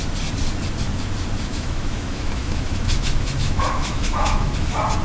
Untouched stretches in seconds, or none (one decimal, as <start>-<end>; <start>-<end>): 0.0-1.5; 4.5-5.0